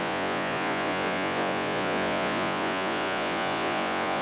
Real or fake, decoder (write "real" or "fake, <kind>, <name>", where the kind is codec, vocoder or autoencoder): fake, vocoder, Vocos